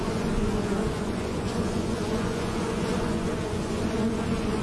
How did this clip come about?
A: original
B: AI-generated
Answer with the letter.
B